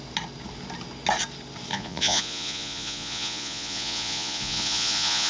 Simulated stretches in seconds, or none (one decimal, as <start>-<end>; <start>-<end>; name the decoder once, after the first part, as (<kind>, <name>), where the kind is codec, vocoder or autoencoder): 1.7-5.3 (vocoder, Vocos)